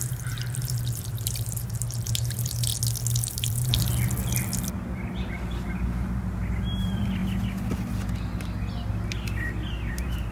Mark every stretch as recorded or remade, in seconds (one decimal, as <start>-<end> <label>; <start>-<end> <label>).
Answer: 0.0-2.7 remade; 2.7-3.3 recorded; 3.3-3.9 remade; 3.9-5.3 recorded; 5.3-7.2 remade; 7.2-9.9 recorded; 9.9-10.3 remade